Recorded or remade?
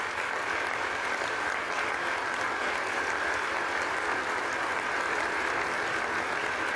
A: recorded